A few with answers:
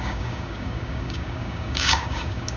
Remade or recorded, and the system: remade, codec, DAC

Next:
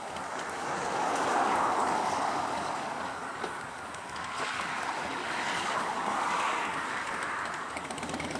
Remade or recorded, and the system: remade, codec, DAC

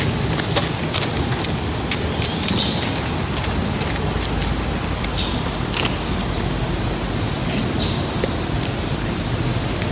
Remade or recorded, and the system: recorded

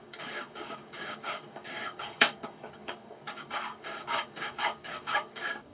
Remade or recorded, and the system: remade, codec, DAC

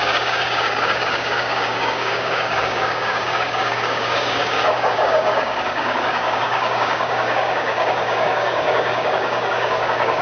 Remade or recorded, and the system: remade, codec, DAC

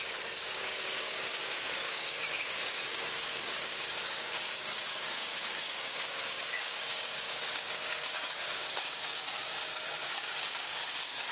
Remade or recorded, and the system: remade, codec, DAC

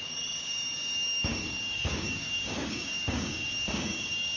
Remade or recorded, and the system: remade, codec, DAC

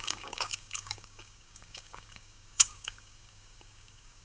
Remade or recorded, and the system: remade, codec, DAC